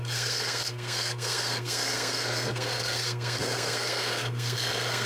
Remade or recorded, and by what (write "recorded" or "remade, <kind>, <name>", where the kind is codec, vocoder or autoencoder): remade, codec, SNAC